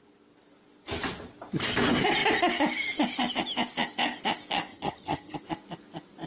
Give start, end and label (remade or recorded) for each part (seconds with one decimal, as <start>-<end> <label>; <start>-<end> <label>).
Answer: 0.0-4.7 recorded; 4.7-5.4 remade; 5.4-6.3 recorded